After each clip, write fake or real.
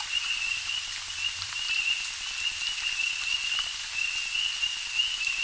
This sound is real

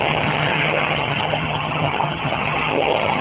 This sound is fake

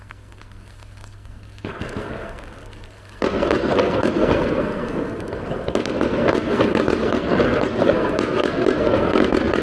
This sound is fake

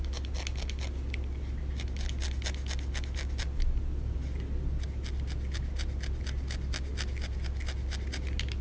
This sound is real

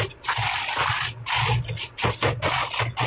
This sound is real